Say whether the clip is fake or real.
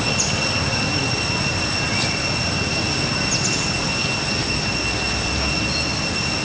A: real